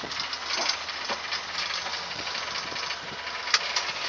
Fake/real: real